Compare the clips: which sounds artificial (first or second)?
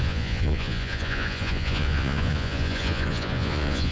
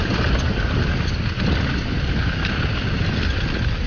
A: first